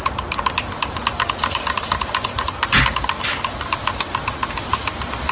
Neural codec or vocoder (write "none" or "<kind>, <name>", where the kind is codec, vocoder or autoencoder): none